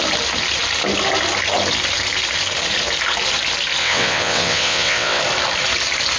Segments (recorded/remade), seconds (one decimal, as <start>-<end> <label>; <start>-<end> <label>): 0.0-3.8 recorded; 3.8-5.2 remade; 5.2-6.2 recorded